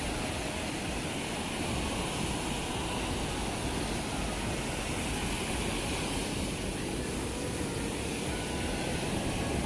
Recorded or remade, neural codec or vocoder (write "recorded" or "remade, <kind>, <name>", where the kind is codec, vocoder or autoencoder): recorded